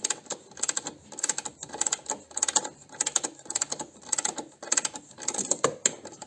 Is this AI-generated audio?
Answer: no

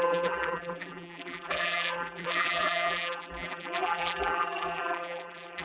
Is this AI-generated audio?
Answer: yes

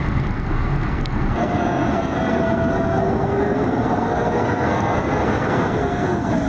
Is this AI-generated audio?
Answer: yes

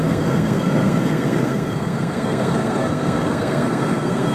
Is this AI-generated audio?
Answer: yes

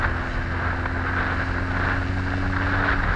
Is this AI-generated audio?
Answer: no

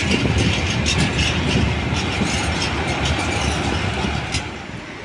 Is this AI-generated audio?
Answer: no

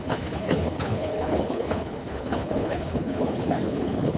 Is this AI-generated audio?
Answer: yes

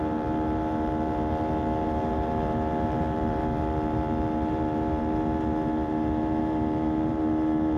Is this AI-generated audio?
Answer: yes